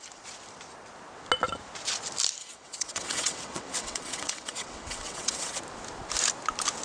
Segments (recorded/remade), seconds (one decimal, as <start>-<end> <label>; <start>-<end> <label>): 0.0-2.4 recorded; 2.4-5.6 remade; 5.6-6.8 recorded

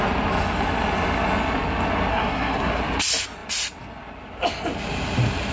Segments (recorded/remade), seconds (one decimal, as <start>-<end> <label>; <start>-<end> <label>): 0.0-2.1 recorded; 2.1-2.8 remade; 2.8-5.5 recorded

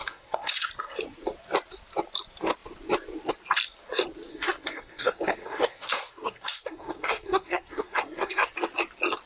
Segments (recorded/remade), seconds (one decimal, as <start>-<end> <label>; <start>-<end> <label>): 0.0-0.7 remade; 0.7-4.3 recorded; 4.3-8.5 remade; 8.5-9.3 recorded

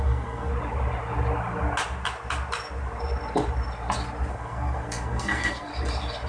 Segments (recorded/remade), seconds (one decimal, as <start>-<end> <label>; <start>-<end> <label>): 0.0-0.5 remade; 0.5-4.3 recorded; 4.3-5.7 remade; 5.7-6.3 recorded

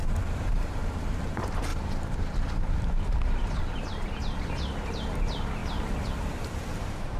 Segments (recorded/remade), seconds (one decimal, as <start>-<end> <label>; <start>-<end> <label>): 0.0-1.7 remade; 1.7-3.6 recorded; 3.6-5.6 remade; 5.6-6.2 recorded; 6.2-7.2 remade

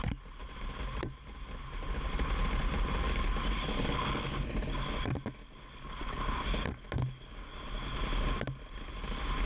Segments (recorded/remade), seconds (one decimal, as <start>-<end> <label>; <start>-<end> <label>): 0.0-0.4 recorded; 0.4-4.1 remade; 4.1-9.5 recorded